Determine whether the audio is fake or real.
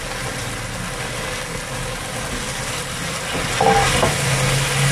real